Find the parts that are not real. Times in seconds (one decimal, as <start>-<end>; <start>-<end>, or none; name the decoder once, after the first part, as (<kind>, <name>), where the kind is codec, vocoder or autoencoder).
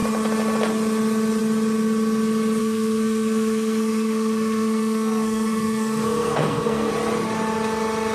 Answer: 2.6-6.9 (codec, SNAC)